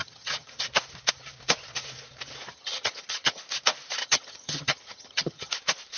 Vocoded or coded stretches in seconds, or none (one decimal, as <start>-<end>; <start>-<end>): 0.0-0.5; 2.5-3.4; 4.0-5.5